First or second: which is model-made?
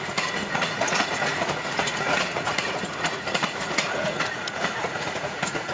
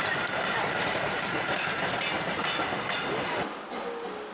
first